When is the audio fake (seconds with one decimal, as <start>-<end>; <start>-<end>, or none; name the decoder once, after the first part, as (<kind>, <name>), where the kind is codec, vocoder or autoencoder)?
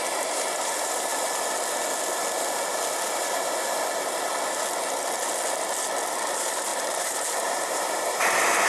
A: 0.0-1.1 (vocoder, BigVGAN v2); 6.3-8.7